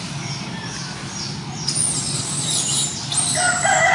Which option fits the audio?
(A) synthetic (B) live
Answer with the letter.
B